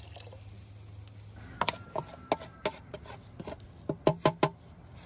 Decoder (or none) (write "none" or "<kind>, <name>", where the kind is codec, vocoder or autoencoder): none